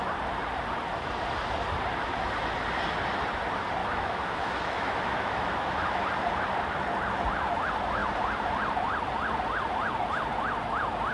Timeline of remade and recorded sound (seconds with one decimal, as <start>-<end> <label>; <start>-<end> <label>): 0.0-3.8 recorded; 3.8-6.0 remade; 6.0-11.1 recorded